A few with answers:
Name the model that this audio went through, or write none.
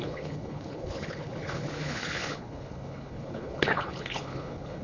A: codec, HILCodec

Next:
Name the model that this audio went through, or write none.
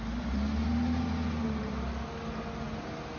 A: none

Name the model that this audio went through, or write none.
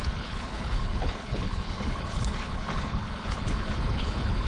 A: codec, HILCodec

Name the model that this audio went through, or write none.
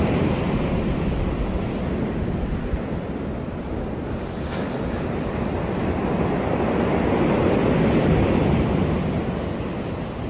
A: none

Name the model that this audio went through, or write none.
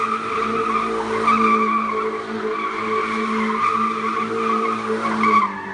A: none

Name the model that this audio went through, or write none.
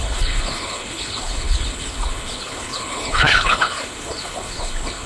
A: codec, HILCodec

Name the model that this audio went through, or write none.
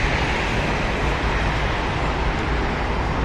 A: none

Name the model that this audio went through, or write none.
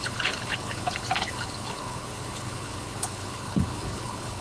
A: codec, HILCodec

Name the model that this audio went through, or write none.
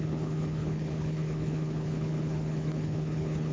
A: codec, HILCodec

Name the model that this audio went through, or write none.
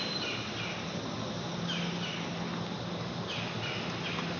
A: none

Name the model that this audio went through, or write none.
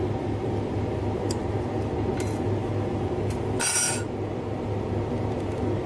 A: none